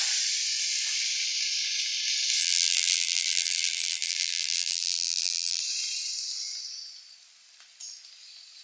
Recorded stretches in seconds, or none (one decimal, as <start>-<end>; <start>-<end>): 0.0-2.4; 5.6-8.6